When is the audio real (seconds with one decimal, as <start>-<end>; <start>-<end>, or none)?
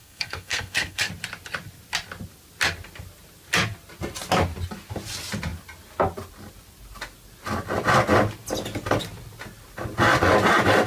1.1-10.9